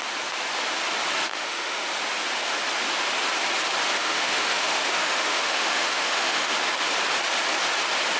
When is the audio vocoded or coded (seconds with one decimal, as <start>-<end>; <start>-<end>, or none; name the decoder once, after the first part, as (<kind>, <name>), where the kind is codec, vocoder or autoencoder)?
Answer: 1.3-1.9 (autoencoder, DAC-VAE); 3.9-6.5